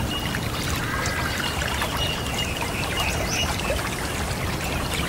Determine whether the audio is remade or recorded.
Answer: recorded